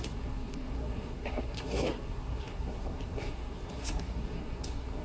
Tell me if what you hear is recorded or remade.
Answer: remade